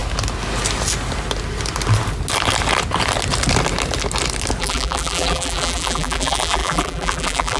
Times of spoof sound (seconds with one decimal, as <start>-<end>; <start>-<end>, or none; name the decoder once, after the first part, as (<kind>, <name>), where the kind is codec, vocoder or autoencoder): 4.6-7.6 (vocoder, BigVGAN v2)